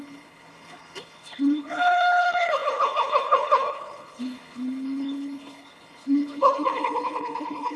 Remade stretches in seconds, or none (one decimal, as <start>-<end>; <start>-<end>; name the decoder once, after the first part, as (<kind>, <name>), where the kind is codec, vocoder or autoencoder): 0.0-7.8 (codec, HILCodec)